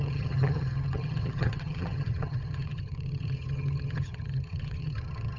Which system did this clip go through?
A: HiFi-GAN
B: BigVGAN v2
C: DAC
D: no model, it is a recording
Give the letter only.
A